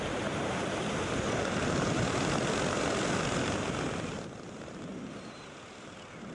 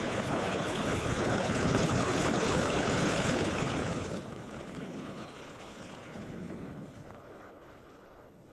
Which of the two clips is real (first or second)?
first